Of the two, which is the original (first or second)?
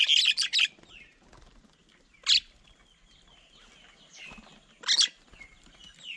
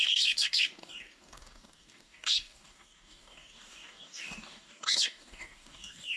first